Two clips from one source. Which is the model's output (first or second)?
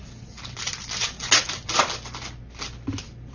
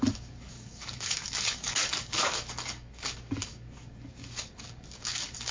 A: second